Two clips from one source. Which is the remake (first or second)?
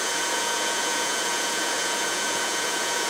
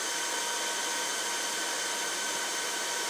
first